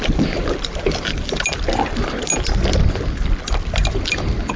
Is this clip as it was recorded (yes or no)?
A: yes